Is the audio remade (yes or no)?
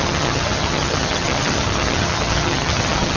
yes